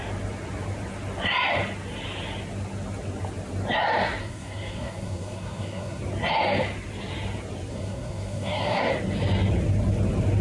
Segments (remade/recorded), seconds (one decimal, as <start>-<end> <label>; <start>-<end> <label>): 0.0-4.2 recorded; 4.2-6.0 remade; 6.0-7.7 recorded; 7.7-8.9 remade; 8.9-10.4 recorded